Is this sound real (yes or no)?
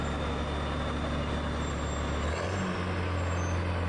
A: yes